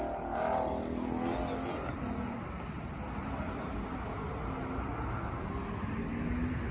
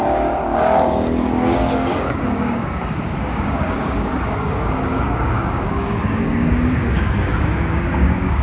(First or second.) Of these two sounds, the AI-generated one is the second